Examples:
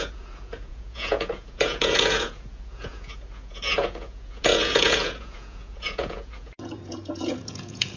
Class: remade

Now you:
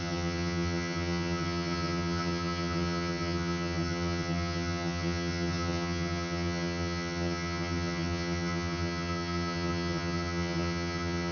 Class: remade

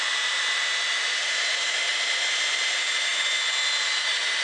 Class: remade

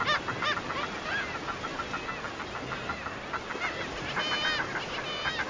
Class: recorded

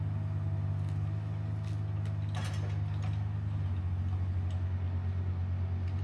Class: recorded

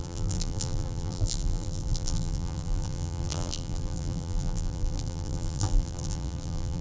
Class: remade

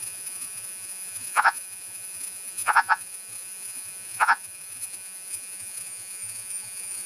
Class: remade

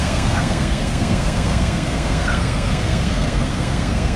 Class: remade